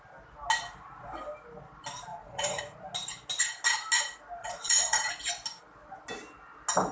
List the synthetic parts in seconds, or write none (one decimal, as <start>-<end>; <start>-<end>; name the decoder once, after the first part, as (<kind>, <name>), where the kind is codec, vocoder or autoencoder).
2.1-2.6 (vocoder, Vocos); 4.4-5.1